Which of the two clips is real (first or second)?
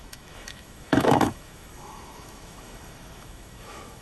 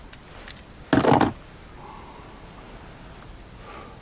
second